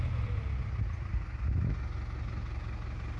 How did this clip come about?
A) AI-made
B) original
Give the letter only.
B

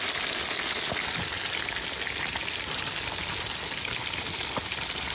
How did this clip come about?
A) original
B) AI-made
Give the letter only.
A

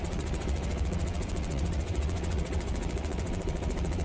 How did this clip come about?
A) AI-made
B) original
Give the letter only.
A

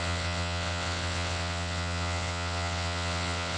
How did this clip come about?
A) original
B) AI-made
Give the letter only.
B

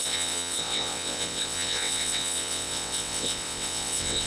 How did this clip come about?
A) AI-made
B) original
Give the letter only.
A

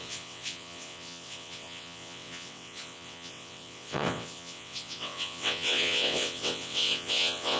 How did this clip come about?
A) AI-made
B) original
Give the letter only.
A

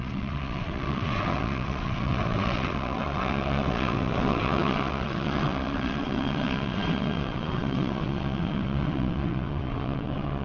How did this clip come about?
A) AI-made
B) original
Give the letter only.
A